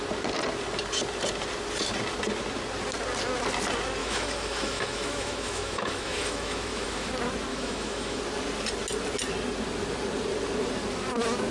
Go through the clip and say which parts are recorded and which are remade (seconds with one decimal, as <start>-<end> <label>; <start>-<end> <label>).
0.0-4.0 recorded; 4.0-7.1 remade; 7.1-7.5 recorded; 7.5-8.2 remade; 8.2-11.5 recorded